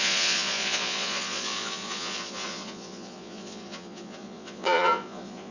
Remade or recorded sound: remade